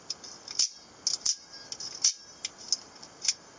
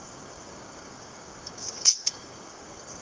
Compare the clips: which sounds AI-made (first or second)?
second